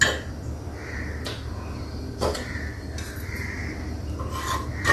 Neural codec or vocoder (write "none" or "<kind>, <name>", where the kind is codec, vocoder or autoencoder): none